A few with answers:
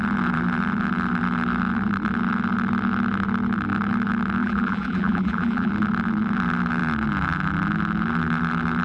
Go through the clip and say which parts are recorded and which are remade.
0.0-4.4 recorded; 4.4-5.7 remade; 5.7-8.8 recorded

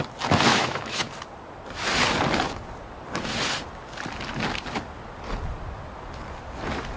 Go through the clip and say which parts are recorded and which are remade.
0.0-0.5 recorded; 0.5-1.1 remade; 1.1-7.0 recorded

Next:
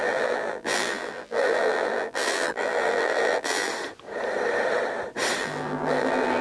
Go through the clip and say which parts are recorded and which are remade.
0.0-3.7 remade; 3.7-5.4 recorded; 5.4-6.4 remade

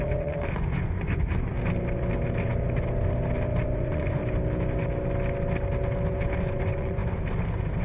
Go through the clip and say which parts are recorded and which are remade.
0.0-1.5 remade; 1.5-3.8 recorded; 3.8-4.2 remade; 4.2-6.4 recorded; 6.4-7.0 remade; 7.0-7.8 recorded